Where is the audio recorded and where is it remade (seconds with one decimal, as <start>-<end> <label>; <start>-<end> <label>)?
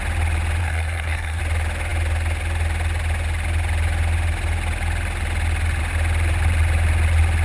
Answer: 0.0-0.6 recorded; 0.6-1.4 remade; 1.4-7.4 recorded